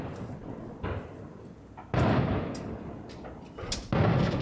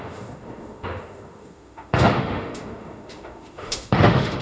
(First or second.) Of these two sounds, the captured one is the first